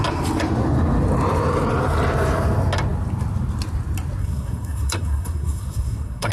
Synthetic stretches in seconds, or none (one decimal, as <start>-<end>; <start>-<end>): 4.2-6.3